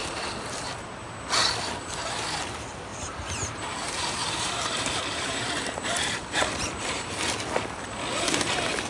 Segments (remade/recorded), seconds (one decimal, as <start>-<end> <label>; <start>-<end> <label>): 0.0-2.9 recorded; 2.9-7.2 remade; 7.2-8.9 recorded